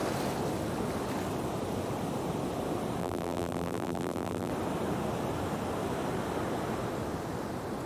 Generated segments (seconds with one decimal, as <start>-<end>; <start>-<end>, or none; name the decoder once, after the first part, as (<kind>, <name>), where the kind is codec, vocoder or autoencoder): 3.0-4.5 (vocoder, BigVGAN v2)